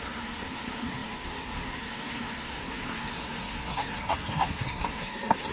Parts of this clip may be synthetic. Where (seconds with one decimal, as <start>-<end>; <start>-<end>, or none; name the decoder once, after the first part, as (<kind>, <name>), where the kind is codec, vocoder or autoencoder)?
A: 0.0-5.5 (codec, SNAC)